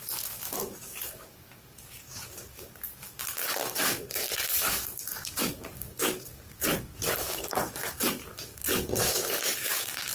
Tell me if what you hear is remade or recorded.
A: remade